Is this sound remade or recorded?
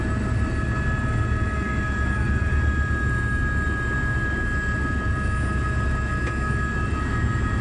recorded